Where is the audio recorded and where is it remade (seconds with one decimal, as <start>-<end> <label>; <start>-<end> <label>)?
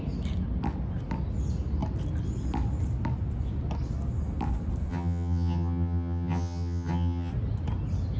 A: 0.0-4.9 recorded; 4.9-7.3 remade; 7.3-8.2 recorded